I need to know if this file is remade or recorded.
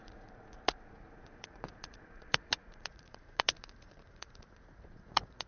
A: remade